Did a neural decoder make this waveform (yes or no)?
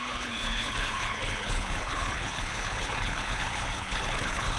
yes